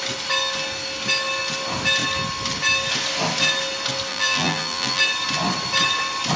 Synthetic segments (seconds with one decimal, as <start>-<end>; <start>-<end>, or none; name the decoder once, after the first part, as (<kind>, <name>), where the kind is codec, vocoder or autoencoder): 4.1-5.0 (vocoder, BigVGAN v2)